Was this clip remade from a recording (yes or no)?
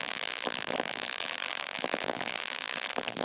yes